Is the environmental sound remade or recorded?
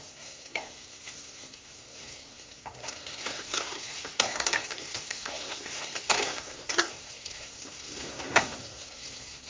remade